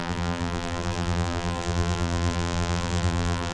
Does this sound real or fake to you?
fake